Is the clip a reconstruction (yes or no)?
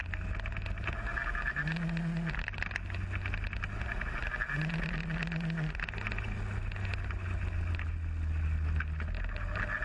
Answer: no